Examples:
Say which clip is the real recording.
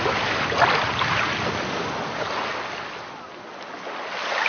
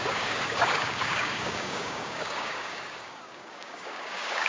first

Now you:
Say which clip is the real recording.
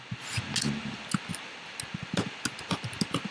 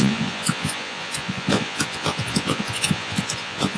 first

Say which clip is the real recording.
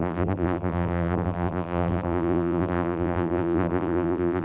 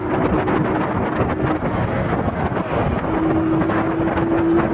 second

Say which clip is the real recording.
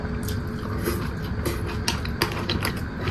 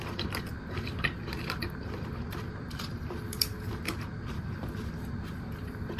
first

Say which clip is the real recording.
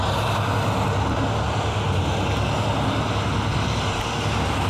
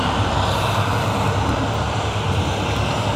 first